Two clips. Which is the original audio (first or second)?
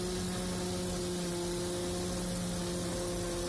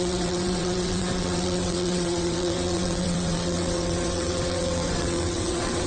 first